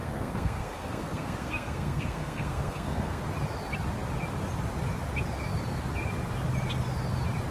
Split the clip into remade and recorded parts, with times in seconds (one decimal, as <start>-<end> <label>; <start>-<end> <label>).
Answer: 0.0-3.2 remade; 3.2-7.5 recorded